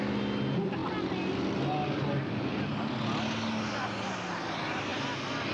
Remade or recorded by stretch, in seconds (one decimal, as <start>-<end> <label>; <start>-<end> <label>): 0.0-5.5 recorded